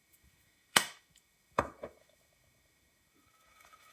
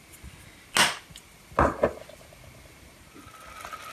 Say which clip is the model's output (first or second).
first